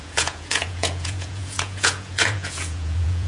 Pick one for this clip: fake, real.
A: fake